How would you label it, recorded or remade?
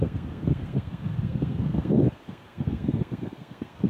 remade